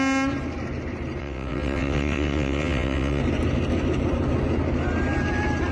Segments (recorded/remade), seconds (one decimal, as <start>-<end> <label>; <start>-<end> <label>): 0.0-1.2 recorded; 1.2-3.2 remade; 3.2-5.7 recorded